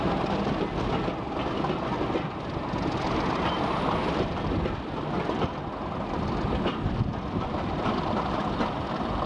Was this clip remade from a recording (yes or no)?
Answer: no